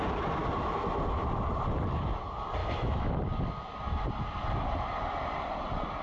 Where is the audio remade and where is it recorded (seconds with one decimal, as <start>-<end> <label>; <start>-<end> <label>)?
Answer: 0.0-2.6 recorded; 2.6-3.1 remade; 3.1-6.0 recorded